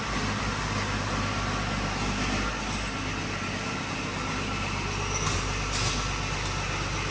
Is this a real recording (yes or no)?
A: yes